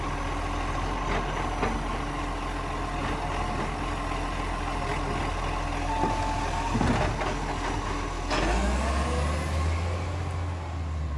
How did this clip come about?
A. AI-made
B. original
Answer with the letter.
B